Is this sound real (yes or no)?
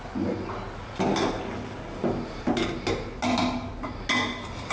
yes